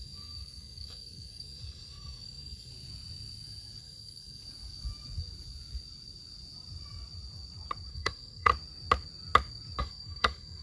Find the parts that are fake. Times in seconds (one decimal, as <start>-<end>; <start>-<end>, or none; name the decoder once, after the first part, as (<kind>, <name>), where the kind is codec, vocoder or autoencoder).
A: 0.0-2.7 (codec, SNAC); 3.8-4.4; 7.9-8.5; 9.8-10.6